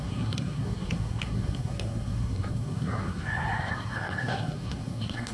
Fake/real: fake